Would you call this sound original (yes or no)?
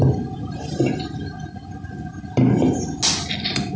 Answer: yes